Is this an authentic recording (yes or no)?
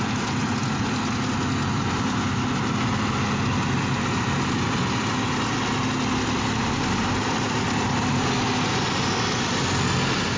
yes